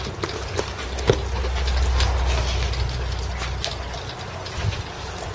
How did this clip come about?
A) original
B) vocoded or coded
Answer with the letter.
A